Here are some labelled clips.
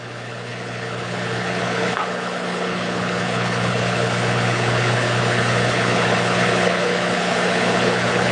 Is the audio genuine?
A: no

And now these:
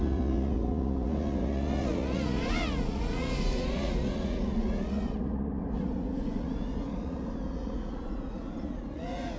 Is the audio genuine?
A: no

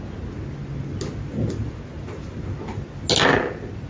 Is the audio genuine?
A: yes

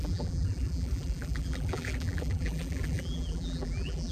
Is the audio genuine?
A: no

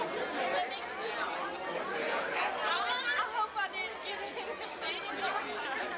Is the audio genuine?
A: yes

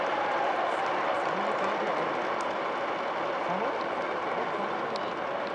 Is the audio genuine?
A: yes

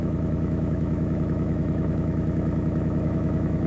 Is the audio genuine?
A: no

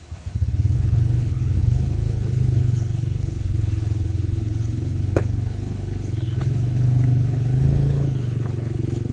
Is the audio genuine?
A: no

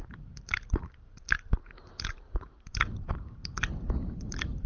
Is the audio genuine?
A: no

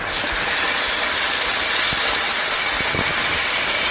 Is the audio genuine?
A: yes